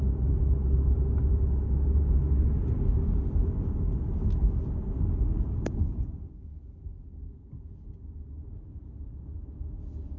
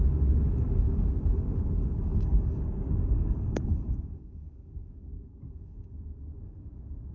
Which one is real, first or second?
first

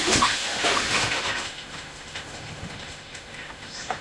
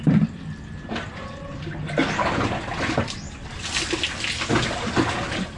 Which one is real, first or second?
second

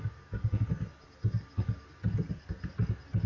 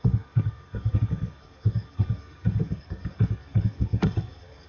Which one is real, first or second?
first